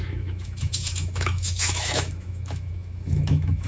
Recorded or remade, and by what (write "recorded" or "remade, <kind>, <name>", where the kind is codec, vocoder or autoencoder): remade, autoencoder, DAC-VAE